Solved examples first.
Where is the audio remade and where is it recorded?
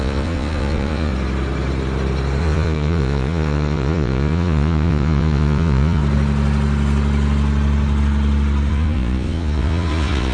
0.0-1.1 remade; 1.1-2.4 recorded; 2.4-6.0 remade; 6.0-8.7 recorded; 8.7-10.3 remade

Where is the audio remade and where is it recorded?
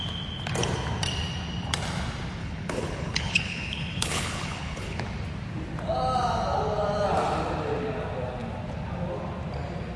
0.0-2.4 recorded; 2.4-5.0 remade; 5.0-10.0 recorded